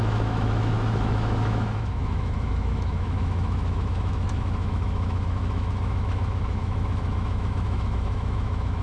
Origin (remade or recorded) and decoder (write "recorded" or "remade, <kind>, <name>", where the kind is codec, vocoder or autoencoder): remade, autoencoder, DAC-VAE